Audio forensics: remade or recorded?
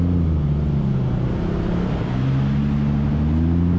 recorded